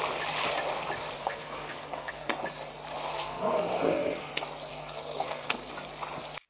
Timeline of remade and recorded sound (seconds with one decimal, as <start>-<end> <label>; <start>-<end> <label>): 0.0-1.2 recorded; 1.2-2.3 remade; 2.3-3.1 recorded; 3.1-4.3 remade; 4.3-4.7 recorded; 4.7-5.7 remade; 5.7-6.5 recorded